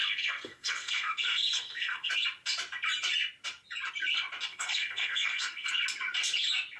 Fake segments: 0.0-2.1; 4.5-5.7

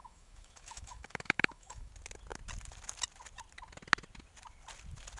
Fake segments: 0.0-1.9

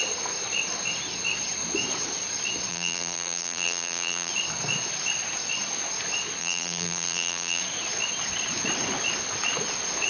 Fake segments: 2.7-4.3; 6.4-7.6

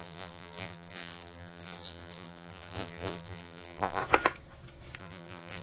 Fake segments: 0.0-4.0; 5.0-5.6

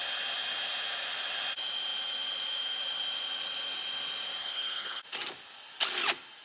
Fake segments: 4.4-5.0

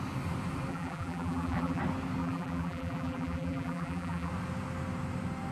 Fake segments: 0.7-1.8; 2.2-4.3

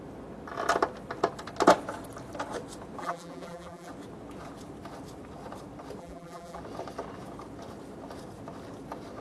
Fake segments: 3.0-3.9; 6.0-6.6